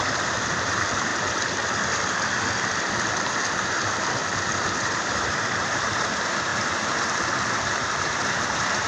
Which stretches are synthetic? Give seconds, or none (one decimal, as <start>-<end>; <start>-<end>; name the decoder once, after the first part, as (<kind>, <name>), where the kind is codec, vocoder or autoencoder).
0.0-1.1 (vocoder, BigVGAN v2); 4.4-6.5; 7.5-8.9